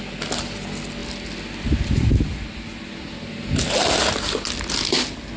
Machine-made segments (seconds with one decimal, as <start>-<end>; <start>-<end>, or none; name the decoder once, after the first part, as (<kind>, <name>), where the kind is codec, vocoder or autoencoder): none